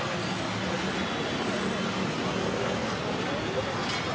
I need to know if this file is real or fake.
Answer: real